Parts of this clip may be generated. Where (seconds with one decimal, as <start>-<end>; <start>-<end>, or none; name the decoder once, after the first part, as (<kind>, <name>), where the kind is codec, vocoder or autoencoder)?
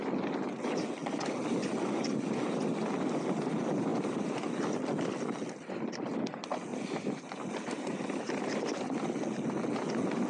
1.0-1.6 (vocoder, BigVGAN v2); 3.9-5.7; 6.7-7.5